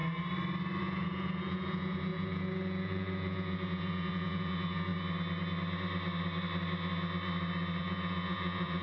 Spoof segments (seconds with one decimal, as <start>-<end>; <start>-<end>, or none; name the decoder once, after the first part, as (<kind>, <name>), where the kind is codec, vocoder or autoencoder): 0.8-4.9 (vocoder, Vocos); 7.8-8.8